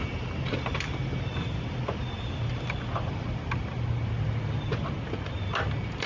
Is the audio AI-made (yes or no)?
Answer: no